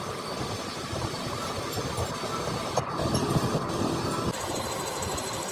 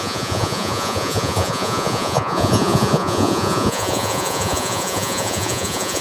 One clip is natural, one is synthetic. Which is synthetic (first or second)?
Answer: second